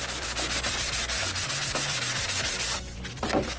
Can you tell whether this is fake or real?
real